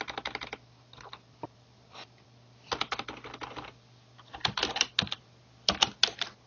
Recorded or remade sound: recorded